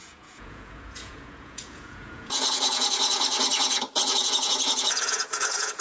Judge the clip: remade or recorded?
remade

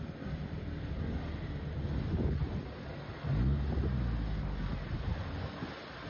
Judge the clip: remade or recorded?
recorded